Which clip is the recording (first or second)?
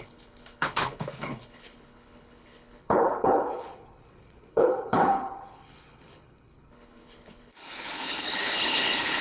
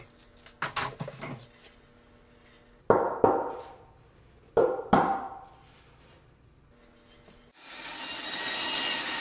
second